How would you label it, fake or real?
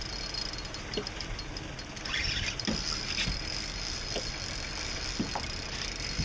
real